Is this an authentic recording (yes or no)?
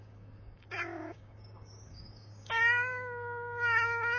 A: no